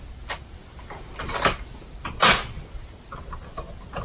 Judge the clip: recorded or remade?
recorded